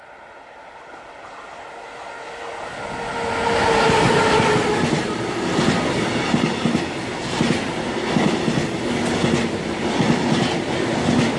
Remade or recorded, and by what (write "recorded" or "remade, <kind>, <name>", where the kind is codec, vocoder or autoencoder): recorded